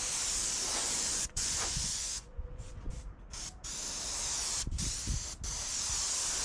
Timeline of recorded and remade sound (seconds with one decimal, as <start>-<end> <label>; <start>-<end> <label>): 0.0-0.7 recorded; 0.7-2.9 remade; 2.9-6.4 recorded